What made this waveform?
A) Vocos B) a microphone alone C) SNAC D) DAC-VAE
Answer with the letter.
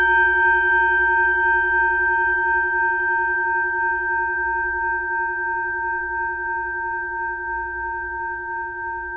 B